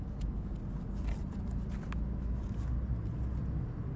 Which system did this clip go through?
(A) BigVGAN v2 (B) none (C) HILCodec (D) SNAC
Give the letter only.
B